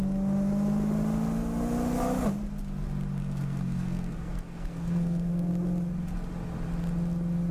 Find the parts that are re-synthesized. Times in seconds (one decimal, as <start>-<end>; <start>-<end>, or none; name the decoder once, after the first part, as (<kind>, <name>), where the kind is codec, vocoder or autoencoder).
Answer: 3.2-5.5 (codec, SNAC)

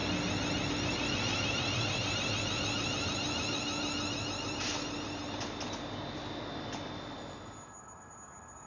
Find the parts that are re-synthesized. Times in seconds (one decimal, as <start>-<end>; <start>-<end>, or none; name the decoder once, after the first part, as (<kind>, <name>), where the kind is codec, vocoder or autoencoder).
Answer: none

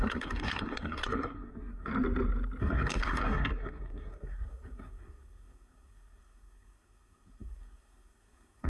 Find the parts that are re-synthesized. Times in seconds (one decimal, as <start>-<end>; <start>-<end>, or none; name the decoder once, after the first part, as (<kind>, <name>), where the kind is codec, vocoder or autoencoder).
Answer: 0.0-1.9 (codec, SNAC); 2.6-8.7

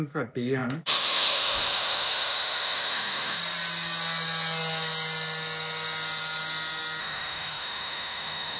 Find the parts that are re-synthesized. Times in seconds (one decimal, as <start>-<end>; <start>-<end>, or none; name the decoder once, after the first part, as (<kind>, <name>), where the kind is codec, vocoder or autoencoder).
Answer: 0.0-3.4 (autoencoder, DAC-VAE); 7.0-8.6

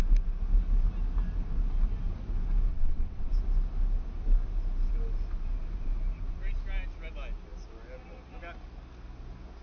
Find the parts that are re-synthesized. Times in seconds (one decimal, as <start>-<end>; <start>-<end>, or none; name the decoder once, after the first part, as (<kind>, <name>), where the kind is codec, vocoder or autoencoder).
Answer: 2.7-3.3 (vocoder, WaveNeXt)

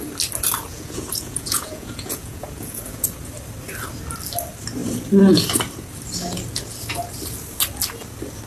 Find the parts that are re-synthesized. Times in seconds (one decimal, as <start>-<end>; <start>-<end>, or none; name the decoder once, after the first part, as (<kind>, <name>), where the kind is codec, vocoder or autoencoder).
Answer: 0.7-3.3 (vocoder, Vocos)

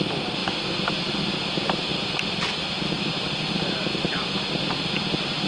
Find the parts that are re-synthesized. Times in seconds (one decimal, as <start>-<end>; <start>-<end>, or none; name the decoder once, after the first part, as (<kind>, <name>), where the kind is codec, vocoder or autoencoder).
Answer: none